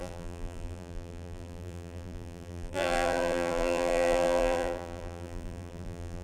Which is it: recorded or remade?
remade